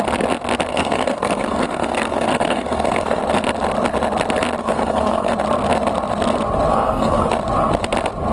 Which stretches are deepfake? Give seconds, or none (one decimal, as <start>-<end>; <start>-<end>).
0.7-3.2; 4.6-5.3; 6.7-7.3